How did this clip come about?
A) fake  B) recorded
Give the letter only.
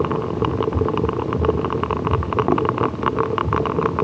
B